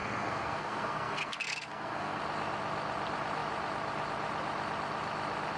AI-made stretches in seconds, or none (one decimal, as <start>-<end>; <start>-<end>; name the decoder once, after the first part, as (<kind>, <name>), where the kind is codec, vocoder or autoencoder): 0.0-2.2 (codec, SNAC)